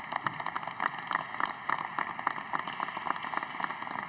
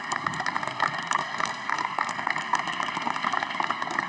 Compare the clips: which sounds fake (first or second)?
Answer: second